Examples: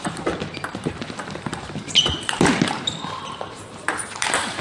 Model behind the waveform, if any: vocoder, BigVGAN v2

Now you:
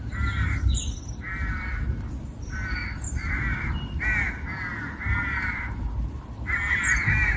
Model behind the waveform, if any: vocoder, BigVGAN v2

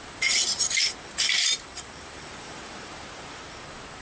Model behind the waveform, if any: vocoder, BigVGAN v2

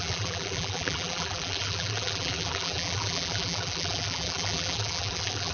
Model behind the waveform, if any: vocoder, BigVGAN v2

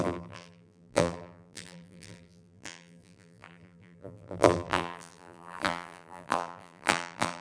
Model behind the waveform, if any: vocoder, BigVGAN v2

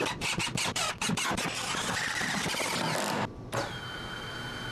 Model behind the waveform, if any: none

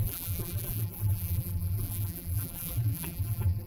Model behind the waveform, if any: vocoder, BigVGAN v2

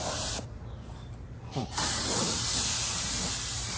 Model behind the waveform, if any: vocoder, BigVGAN v2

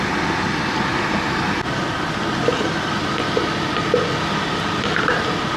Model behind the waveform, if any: none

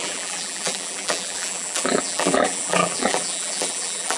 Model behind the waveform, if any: vocoder, BigVGAN v2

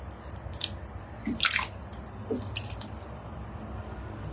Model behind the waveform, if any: none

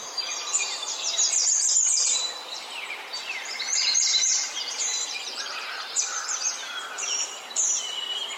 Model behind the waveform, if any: vocoder, BigVGAN v2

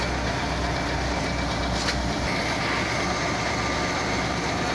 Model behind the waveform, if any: none